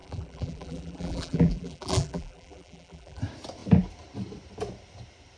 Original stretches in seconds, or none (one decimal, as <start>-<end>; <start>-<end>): 3.2-5.4